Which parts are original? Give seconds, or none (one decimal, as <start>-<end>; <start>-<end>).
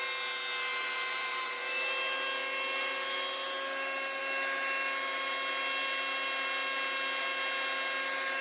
0.0-0.7; 1.6-8.4